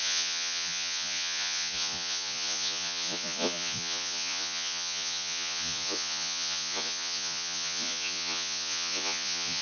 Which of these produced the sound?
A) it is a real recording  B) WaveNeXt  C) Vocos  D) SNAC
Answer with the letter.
C